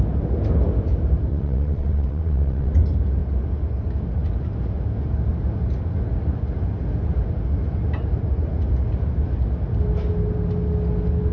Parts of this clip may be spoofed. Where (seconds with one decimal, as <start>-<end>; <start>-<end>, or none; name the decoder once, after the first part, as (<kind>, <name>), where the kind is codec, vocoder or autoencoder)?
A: 1.3-2.7 (vocoder, WaveNeXt)